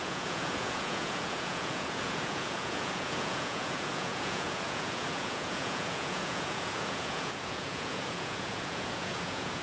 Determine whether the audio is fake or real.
fake